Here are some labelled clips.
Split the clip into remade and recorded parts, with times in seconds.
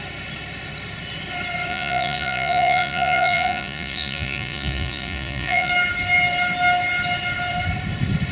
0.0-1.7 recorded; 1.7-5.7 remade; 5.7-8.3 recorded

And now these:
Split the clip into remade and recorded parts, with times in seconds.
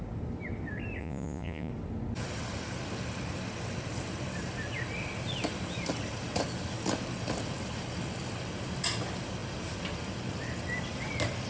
0.0-1.0 recorded; 1.0-1.7 remade; 1.7-11.5 recorded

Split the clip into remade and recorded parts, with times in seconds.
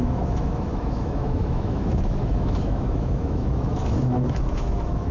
0.0-5.1 remade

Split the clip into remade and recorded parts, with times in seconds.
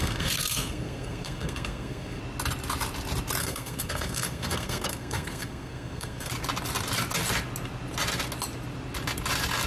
0.0-2.2 remade; 2.2-3.4 recorded; 3.4-6.3 remade; 6.3-9.7 recorded